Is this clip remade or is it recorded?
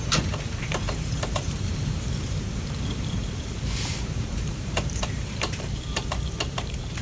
remade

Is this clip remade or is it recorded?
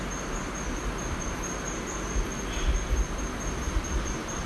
recorded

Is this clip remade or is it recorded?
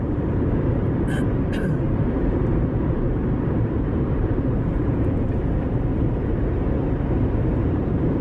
remade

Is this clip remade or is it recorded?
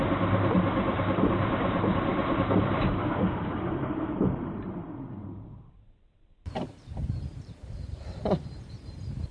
remade